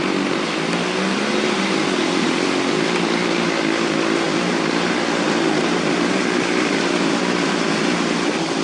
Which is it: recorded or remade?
recorded